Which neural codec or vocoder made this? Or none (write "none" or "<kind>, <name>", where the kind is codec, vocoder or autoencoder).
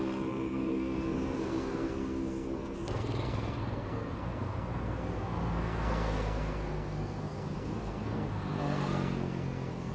codec, SNAC